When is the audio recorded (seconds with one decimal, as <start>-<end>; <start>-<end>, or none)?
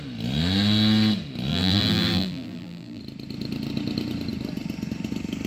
0.0-1.5; 3.0-5.5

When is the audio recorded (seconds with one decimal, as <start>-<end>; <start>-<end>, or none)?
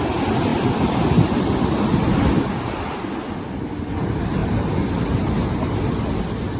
0.0-6.6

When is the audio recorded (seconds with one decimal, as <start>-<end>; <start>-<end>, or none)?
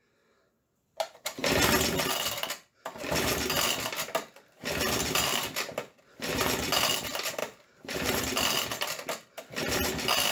0.0-7.4; 8.2-10.3